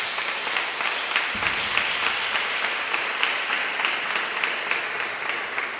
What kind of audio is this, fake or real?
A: real